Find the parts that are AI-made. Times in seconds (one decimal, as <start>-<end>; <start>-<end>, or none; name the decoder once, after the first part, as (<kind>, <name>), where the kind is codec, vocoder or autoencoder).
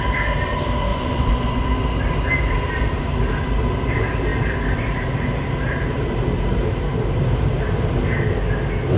0.9-1.6 (vocoder, Vocos)